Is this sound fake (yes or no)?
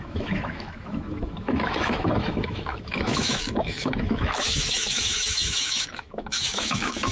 yes